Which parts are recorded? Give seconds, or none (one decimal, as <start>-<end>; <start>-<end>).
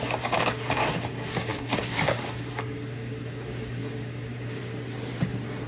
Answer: 4.6-5.7